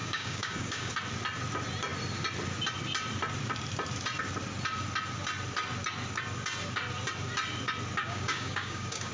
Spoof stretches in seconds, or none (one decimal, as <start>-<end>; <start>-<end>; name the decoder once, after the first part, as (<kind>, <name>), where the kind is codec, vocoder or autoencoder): 0.0-0.9 (codec, DAC); 8.0-9.1